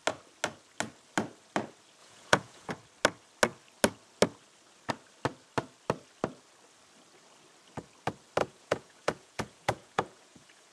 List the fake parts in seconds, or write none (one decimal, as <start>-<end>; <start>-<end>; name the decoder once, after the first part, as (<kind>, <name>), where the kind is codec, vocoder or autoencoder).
2.0-2.7 (vocoder, Vocos); 8.4-10.7